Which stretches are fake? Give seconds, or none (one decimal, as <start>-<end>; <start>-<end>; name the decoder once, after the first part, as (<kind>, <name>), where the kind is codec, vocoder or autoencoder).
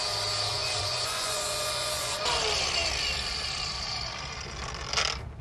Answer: 0.5-2.2 (vocoder, Vocos)